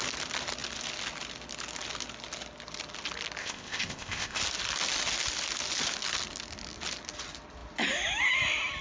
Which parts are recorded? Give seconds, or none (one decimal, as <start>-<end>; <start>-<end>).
0.0-3.4; 4.4-8.8